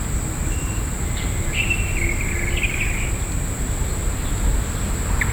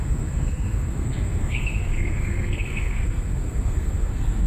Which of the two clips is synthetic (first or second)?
second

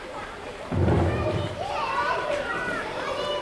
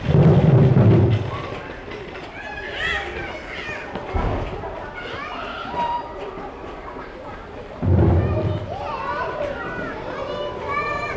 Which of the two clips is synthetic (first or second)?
first